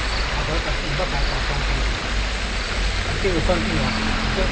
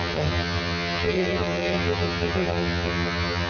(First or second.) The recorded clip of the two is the first